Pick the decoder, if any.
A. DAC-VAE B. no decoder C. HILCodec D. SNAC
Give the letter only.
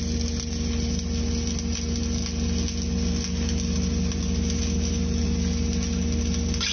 B